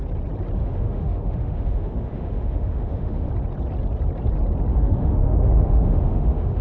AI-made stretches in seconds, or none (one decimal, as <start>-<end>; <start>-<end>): 0.6-3.3; 4.7-6.6